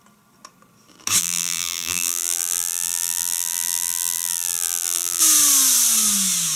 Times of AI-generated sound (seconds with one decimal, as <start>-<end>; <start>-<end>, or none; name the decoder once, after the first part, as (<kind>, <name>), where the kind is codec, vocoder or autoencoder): 1.2-5.2 (vocoder, BigVGAN v2)